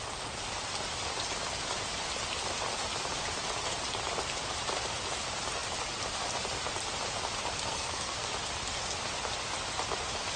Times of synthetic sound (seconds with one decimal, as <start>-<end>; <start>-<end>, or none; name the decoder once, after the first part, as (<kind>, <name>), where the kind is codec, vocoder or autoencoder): 7.5-8.3 (codec, SNAC)